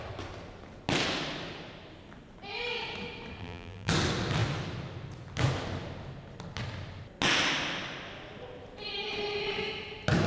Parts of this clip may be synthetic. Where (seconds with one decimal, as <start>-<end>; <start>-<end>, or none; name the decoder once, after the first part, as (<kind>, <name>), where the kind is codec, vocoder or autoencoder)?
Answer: 3.4-3.9 (vocoder, BigVGAN v2)